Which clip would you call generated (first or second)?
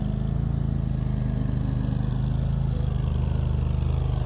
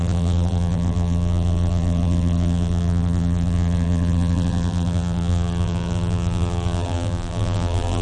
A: second